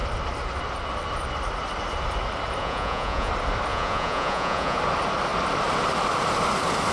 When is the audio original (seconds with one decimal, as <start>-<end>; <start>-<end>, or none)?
0.0-2.6; 3.3-3.7; 4.8-6.9

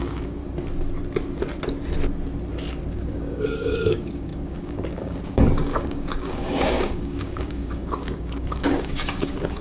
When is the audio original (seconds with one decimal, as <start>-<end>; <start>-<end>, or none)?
0.4-2.9

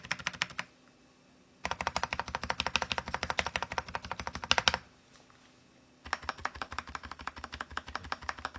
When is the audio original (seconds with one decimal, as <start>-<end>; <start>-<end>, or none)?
0.0-6.4; 7.3-8.6

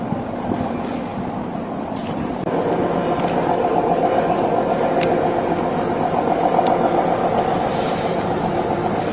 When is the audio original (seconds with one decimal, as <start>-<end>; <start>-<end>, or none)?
0.0-9.1

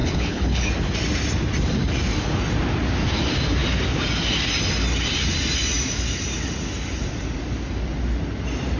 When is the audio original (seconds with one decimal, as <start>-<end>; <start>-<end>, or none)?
0.7-8.8

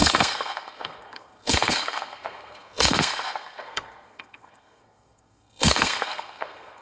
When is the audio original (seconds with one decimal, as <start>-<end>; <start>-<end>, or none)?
none